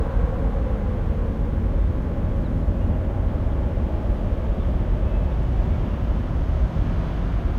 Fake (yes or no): no